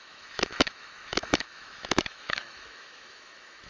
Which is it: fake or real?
fake